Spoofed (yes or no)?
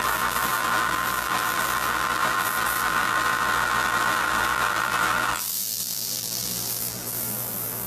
yes